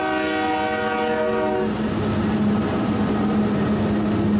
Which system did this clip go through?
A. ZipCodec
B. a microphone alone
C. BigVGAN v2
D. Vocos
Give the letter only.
B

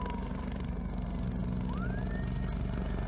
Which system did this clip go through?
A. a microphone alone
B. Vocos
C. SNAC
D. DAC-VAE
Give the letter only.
A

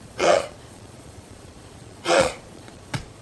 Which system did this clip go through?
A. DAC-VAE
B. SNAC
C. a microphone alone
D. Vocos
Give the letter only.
D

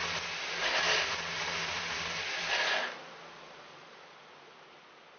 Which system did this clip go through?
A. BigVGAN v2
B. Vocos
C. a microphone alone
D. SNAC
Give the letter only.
C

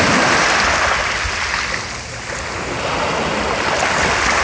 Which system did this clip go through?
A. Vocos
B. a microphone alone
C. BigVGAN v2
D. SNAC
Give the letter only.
B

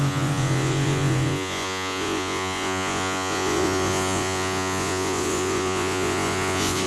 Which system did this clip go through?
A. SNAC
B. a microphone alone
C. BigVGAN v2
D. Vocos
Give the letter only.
D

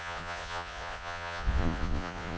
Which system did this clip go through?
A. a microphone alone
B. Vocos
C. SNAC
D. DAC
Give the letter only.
B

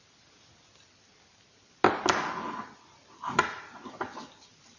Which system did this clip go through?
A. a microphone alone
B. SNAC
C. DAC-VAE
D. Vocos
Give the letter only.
A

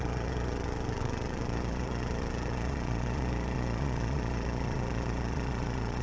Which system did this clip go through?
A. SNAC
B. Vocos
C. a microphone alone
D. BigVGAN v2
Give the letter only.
B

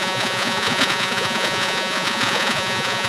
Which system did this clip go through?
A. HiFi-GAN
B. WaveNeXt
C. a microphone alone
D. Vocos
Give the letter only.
D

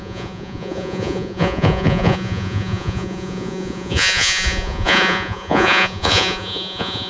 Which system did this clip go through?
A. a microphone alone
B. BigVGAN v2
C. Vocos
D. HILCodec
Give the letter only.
C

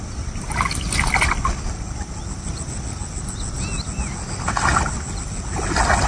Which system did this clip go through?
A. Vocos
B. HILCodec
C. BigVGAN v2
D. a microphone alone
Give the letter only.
D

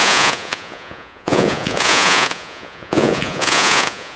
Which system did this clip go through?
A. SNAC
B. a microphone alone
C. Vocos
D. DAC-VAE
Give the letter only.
C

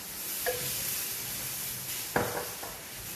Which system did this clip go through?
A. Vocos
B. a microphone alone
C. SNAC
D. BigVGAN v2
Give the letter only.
B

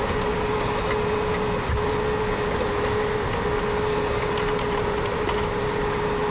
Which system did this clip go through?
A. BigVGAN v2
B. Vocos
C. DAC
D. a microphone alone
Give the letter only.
D